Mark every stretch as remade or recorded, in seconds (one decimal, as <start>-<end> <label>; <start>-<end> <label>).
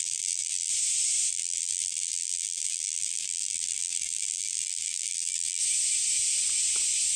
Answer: 0.0-0.7 remade; 0.7-1.3 recorded; 1.3-5.6 remade; 5.6-7.2 recorded